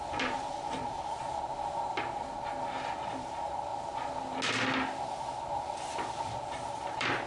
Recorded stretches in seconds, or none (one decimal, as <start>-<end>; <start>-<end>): 1.2-3.1; 3.7-5.1